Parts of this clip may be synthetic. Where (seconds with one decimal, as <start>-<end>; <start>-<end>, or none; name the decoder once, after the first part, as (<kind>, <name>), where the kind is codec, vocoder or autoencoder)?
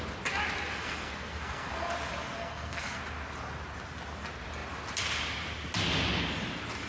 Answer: 0.8-1.9 (codec, SNAC); 2.4-3.0